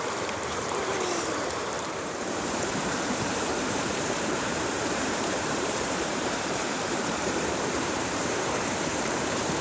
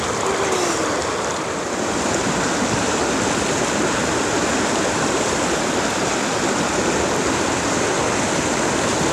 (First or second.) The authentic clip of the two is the second